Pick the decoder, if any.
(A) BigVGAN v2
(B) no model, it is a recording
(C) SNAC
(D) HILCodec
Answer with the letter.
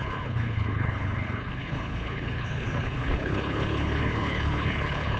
D